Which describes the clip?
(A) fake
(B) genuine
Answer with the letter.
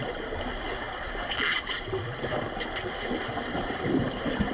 B